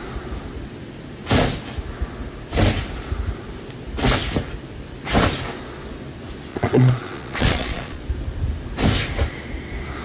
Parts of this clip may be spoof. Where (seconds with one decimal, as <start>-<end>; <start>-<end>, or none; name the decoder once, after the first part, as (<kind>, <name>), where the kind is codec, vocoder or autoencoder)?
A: 6.5-8.0 (vocoder, Vocos)

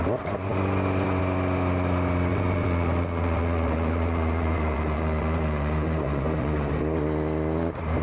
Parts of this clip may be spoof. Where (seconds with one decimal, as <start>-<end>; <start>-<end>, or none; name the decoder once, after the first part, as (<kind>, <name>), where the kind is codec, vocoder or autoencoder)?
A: 2.3-6.7 (vocoder, Vocos)

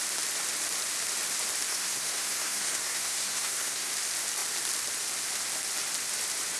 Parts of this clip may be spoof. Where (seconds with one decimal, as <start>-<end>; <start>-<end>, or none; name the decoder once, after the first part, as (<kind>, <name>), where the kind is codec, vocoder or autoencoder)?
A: 1.7-3.9 (codec, SNAC)

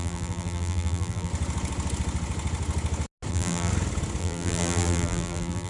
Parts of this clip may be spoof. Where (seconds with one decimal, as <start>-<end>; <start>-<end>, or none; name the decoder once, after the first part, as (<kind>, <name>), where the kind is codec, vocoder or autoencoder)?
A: 0.0-1.3 (vocoder, BigVGAN v2); 3.3-3.7; 4.2-5.7

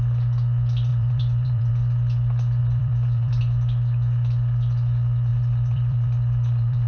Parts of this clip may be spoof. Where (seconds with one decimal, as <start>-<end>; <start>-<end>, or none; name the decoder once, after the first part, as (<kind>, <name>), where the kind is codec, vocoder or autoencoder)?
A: 0.9-1.7 (vocoder, BigVGAN v2); 2.6-3.4; 5.3-6.9